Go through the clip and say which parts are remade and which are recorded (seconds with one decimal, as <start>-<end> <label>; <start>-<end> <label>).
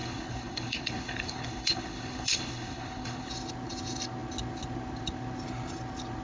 0.0-3.3 remade; 3.3-6.2 recorded